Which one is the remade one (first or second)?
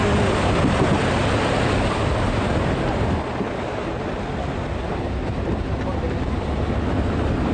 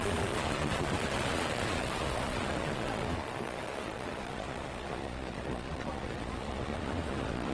second